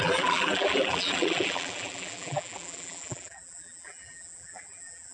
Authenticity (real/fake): fake